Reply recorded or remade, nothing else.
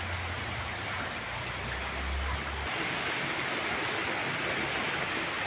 recorded